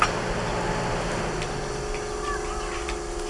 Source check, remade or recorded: recorded